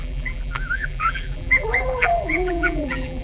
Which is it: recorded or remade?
remade